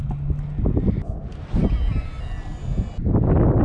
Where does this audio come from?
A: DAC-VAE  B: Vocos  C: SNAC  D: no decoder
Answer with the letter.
D